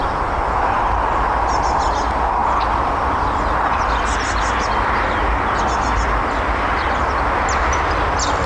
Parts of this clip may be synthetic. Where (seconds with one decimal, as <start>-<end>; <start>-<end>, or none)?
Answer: none